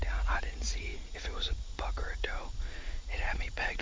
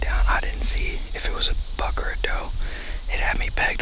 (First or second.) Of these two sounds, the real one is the second